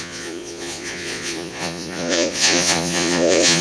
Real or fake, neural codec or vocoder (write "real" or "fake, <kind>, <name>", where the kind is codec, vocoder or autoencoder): fake, vocoder, Vocos